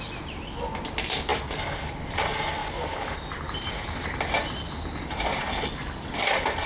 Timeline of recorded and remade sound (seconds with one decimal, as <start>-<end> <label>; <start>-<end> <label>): 0.0-6.7 recorded